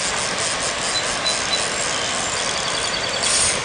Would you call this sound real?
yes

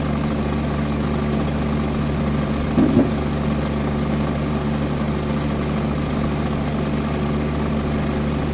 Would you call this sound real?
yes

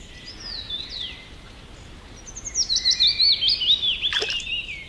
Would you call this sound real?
yes